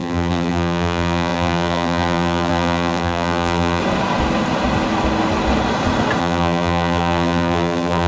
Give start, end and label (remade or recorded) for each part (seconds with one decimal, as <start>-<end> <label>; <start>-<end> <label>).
0.0-3.8 remade; 3.8-6.2 recorded; 6.2-8.1 remade